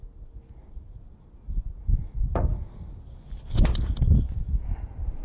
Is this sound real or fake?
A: real